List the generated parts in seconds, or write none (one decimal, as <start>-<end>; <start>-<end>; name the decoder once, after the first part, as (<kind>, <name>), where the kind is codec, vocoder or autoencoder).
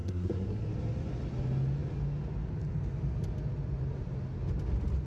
0.0-0.6 (codec, SNAC)